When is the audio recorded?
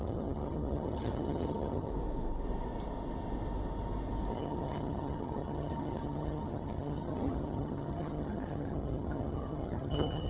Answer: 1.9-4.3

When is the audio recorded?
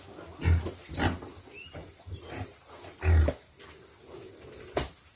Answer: 0.0-5.2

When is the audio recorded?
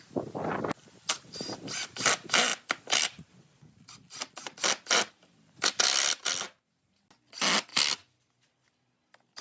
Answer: 0.0-9.4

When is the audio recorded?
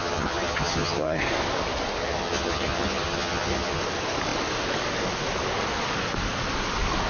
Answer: 1.2-2.0; 3.8-7.1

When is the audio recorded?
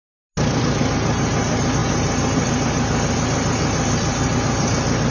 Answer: 0.0-5.1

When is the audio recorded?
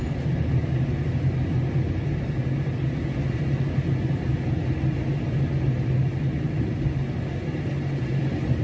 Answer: 0.0-8.6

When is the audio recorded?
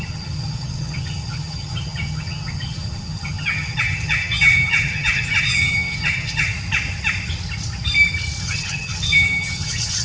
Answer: 6.5-8.4